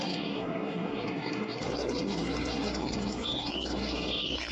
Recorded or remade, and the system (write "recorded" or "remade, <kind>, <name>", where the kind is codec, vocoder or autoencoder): remade, codec, SNAC